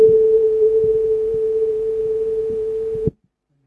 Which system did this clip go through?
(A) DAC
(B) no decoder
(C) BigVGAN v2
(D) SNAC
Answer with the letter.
C